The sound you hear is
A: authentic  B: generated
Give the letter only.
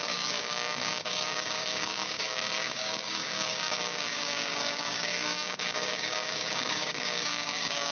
B